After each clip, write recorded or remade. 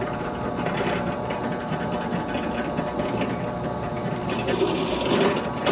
recorded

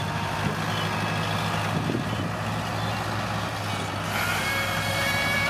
recorded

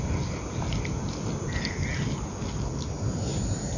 recorded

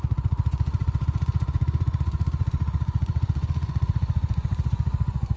remade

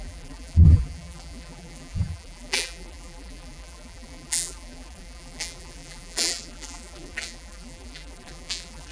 remade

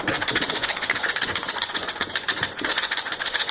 remade